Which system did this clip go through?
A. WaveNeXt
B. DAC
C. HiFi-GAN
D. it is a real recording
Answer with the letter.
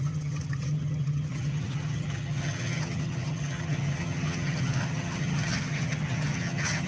C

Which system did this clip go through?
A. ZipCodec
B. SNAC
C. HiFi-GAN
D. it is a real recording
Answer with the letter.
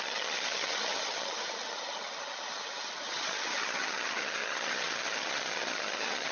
C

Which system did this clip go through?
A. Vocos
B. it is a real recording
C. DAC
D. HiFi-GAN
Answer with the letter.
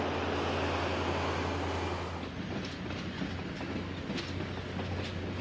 B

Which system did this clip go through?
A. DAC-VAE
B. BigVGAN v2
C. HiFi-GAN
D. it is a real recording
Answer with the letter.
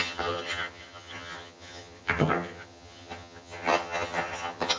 C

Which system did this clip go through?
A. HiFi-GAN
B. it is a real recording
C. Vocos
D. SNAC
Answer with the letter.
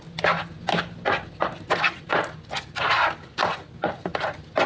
B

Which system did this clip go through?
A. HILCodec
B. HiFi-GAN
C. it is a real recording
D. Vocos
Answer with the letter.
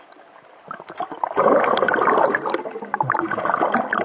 C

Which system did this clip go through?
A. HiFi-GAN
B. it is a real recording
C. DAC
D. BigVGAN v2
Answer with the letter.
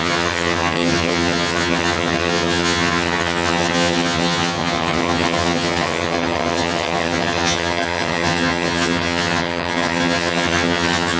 A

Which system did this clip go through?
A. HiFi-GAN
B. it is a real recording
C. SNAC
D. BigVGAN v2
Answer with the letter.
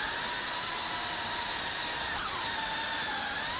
B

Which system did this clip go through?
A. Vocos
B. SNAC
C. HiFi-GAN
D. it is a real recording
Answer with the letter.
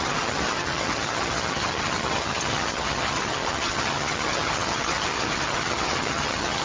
C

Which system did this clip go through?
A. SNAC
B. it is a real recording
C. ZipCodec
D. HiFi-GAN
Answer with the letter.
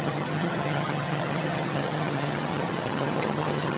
D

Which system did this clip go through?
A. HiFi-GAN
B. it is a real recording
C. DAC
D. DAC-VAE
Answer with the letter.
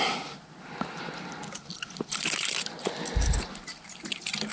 B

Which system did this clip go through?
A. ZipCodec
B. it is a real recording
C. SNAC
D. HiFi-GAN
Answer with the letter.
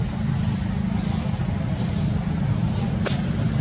B